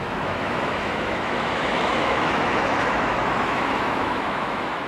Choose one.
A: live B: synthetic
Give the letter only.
B